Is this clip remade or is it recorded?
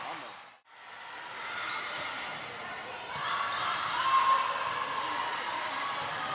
recorded